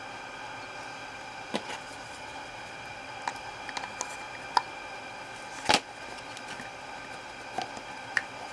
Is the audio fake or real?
real